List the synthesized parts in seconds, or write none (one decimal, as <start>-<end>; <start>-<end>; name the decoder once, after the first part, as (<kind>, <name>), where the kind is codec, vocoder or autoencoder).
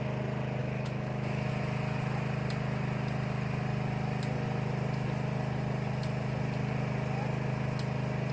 0.6-1.5 (autoencoder, DAC-VAE)